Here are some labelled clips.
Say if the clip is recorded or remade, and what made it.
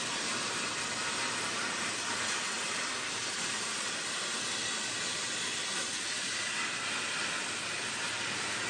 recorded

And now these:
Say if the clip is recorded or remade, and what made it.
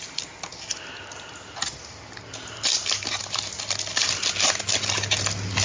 recorded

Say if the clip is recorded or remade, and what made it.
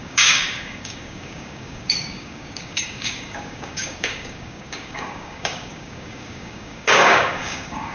remade, codec, DAC